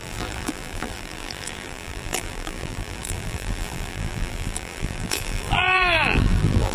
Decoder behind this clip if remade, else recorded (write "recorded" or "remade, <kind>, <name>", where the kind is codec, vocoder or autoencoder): remade, vocoder, BigVGAN v2